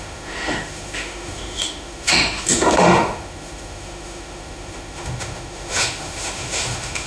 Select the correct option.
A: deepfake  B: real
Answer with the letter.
A